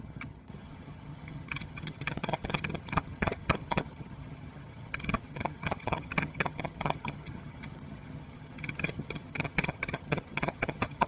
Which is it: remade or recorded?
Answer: remade